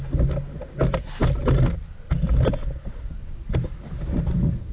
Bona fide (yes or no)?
yes